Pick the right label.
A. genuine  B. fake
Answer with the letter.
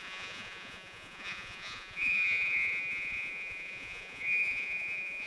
B